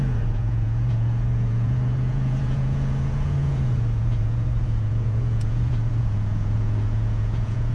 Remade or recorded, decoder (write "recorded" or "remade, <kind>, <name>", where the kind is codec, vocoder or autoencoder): remade, vocoder, Vocos